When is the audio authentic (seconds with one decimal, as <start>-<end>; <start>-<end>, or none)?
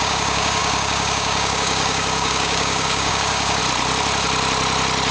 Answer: 3.6-5.1